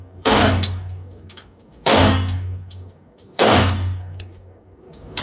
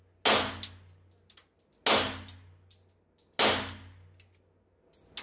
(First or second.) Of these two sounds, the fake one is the first